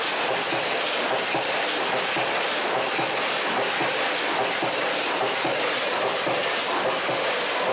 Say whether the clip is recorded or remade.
recorded